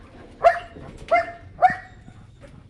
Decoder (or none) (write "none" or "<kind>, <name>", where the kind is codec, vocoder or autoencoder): none